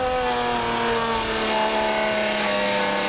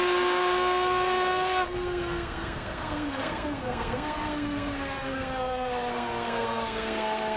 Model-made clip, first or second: second